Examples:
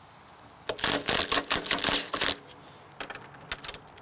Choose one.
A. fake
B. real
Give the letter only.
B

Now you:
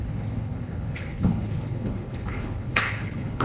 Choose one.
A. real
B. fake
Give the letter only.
B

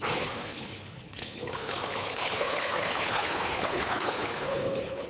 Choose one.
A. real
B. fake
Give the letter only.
B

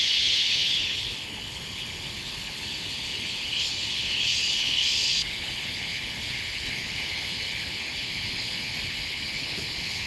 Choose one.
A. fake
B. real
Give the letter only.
A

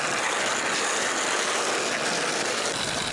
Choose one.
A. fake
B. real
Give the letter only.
B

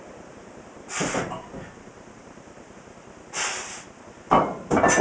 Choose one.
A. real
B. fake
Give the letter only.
A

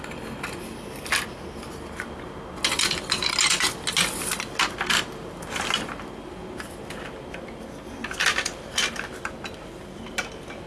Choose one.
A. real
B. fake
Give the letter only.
A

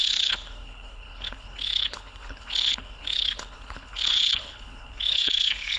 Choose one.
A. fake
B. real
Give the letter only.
A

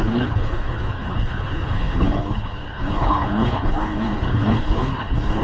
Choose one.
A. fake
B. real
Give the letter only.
A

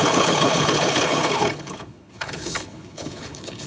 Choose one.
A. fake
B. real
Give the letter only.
A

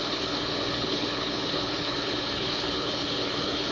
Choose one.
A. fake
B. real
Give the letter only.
A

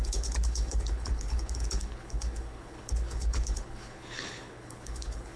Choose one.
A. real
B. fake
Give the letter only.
B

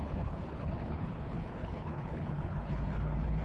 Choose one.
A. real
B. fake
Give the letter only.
B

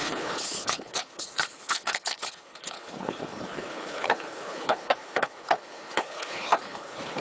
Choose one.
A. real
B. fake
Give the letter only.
B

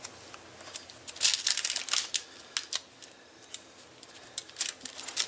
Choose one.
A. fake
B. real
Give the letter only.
B